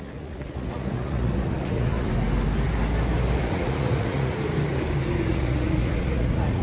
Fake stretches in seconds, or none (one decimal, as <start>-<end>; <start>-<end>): 0.0-2.1; 3.4-4.3; 5.2-6.6